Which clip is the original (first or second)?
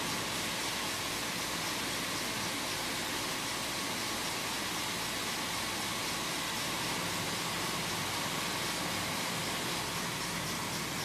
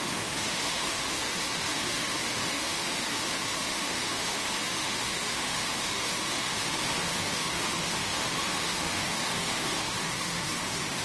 first